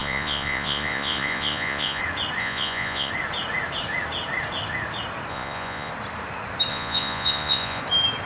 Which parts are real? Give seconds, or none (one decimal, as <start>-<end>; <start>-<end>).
2.0-2.4; 3.1-5.3; 5.9-6.7; 7.8-8.3